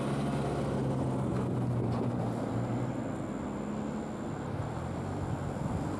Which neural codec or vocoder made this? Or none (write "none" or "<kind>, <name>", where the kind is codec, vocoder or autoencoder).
none